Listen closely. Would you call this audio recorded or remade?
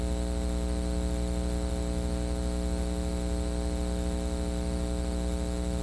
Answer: recorded